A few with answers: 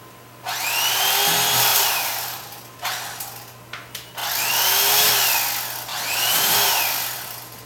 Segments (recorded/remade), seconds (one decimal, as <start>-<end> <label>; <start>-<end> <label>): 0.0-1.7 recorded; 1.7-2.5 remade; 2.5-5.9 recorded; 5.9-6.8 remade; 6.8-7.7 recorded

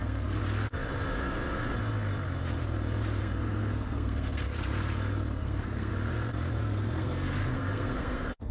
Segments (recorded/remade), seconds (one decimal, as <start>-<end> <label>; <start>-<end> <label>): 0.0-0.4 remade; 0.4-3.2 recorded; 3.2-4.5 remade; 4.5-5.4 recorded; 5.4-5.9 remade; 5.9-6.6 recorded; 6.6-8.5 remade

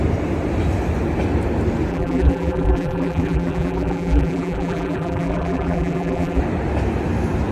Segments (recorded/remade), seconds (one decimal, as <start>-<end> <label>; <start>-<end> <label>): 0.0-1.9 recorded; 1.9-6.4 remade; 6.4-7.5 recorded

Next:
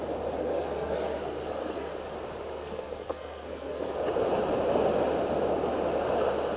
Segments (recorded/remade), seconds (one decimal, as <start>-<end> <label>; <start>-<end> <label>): 0.0-0.4 recorded; 0.4-1.9 remade; 1.9-2.5 recorded; 2.5-3.9 remade; 3.9-6.6 recorded